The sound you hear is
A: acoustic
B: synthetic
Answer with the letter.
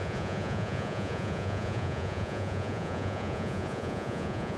B